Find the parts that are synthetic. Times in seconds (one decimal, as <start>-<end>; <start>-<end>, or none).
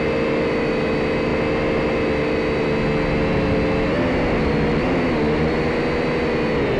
none